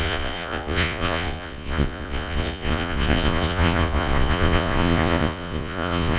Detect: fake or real fake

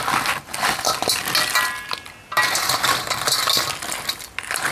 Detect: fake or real real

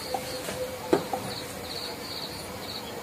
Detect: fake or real real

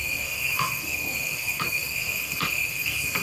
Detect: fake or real fake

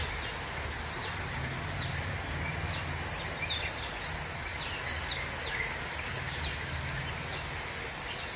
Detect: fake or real real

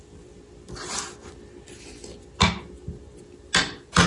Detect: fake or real real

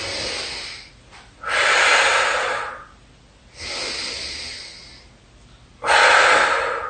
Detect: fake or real real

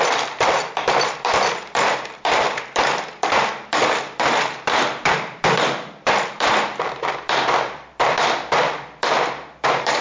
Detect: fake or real fake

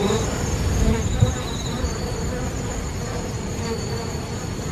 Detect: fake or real fake